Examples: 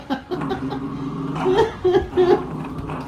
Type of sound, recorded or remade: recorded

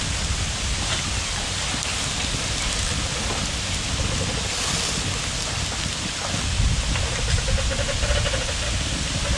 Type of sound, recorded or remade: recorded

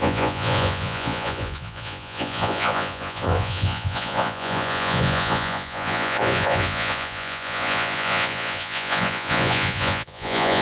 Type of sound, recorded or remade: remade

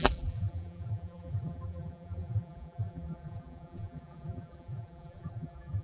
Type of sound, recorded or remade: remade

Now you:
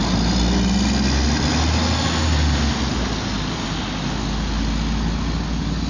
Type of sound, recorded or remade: recorded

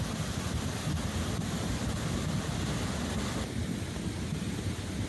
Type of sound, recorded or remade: recorded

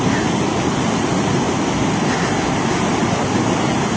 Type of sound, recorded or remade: recorded